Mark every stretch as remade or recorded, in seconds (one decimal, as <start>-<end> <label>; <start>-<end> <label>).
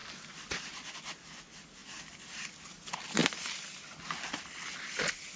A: 0.0-5.4 recorded